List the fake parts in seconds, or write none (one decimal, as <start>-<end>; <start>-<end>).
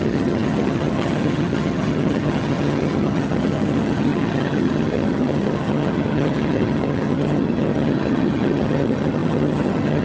0.0-10.0